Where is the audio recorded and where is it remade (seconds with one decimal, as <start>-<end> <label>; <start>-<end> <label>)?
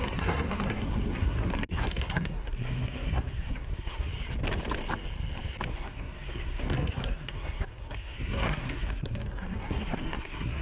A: 0.0-4.1 remade; 4.1-5.7 recorded; 5.7-10.6 remade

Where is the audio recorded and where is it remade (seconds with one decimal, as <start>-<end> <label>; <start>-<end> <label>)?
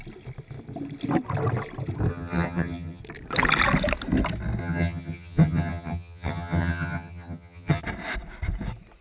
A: 0.0-2.1 recorded; 2.1-3.0 remade; 3.0-4.6 recorded; 4.6-7.8 remade; 7.8-9.0 recorded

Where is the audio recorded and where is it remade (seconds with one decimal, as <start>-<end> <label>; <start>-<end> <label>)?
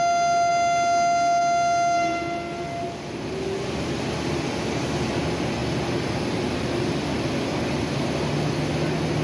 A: 0.0-9.2 recorded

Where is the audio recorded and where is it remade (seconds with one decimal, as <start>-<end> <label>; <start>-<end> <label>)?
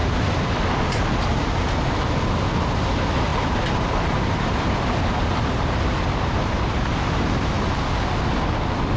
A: 0.0-3.3 recorded; 3.3-7.6 remade; 7.6-9.0 recorded